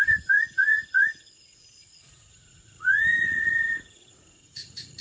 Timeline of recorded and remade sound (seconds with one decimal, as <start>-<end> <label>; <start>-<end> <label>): 0.0-5.0 remade